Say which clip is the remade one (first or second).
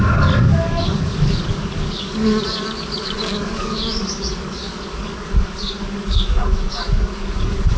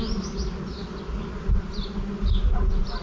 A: first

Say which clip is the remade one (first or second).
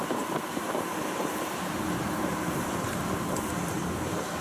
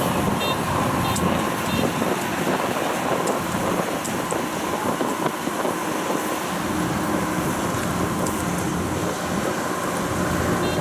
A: first